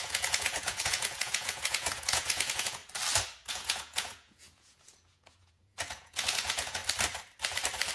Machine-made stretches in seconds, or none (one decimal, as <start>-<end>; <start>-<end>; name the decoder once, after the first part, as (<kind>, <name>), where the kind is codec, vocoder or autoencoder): 0.0-2.8 (vocoder, Vocos); 3.5-6.8